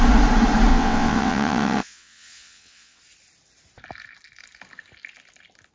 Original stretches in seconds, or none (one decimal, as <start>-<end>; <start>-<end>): 0.0-0.7; 3.0-5.7